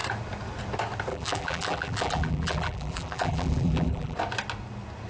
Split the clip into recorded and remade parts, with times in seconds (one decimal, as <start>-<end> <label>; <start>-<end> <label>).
0.0-1.1 recorded; 1.1-4.2 remade; 4.2-5.1 recorded